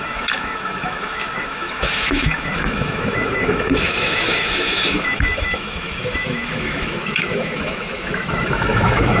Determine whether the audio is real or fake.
fake